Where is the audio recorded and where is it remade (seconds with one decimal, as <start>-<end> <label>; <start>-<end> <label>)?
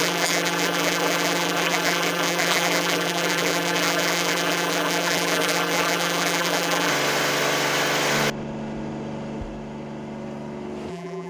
0.0-6.9 remade; 6.9-10.9 recorded; 10.9-11.3 remade